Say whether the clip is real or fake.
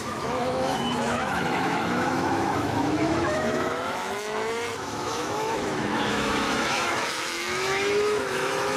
fake